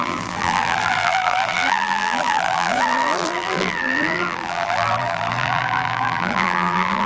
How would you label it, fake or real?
fake